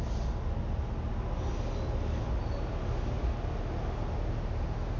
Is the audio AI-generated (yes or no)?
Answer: no